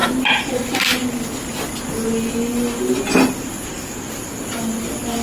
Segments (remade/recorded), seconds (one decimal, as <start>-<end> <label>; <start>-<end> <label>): 0.0-1.0 remade; 1.0-4.1 recorded; 4.1-5.2 remade